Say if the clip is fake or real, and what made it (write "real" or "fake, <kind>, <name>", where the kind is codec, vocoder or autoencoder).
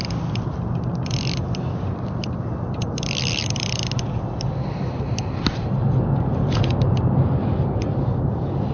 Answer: real